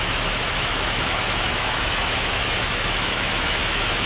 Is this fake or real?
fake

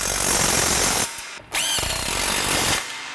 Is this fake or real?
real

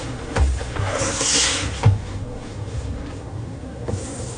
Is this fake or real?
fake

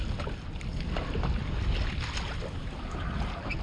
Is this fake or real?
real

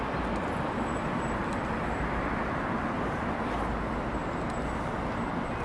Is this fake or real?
real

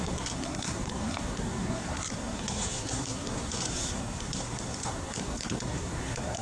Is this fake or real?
fake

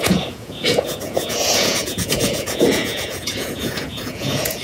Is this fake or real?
fake